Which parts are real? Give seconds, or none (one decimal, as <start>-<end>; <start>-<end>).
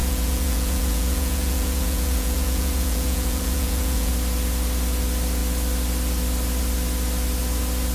4.1-7.9